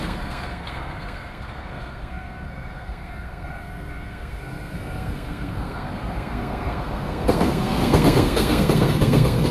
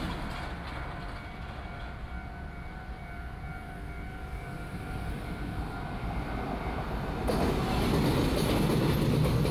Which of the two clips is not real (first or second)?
first